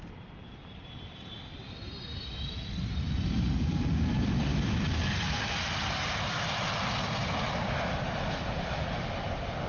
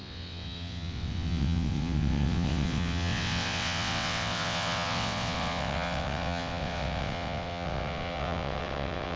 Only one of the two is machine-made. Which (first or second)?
second